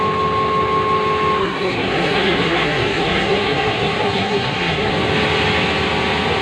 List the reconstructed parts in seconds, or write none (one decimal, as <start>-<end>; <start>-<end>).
1.4-4.9